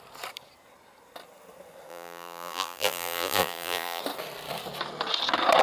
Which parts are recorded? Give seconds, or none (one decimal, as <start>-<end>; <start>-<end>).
0.0-1.9; 4.0-5.6